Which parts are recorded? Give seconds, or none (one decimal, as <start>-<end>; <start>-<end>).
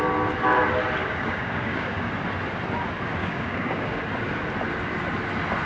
0.0-1.0; 2.1-3.2; 4.0-5.7